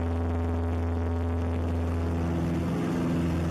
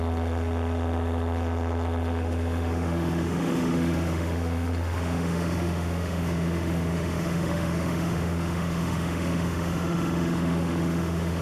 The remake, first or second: second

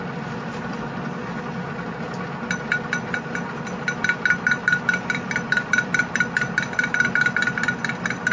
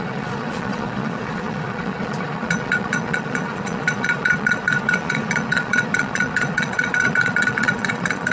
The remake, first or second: second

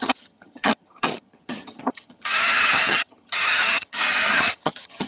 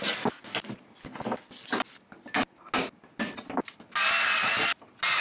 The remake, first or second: first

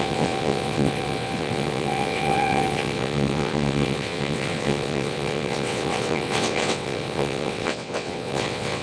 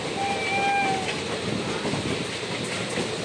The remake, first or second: first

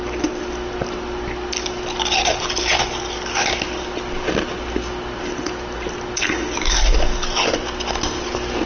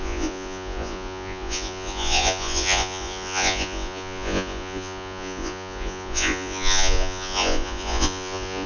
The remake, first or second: second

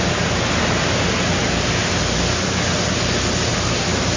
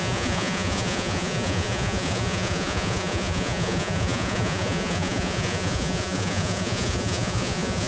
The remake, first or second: second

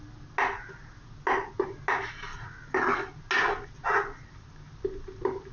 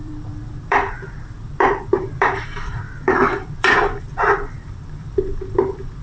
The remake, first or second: second